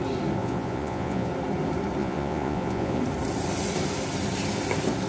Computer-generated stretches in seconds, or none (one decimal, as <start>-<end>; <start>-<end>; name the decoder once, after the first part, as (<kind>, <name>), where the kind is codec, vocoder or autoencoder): 0.4-1.3 (vocoder, Vocos); 2.0-3.0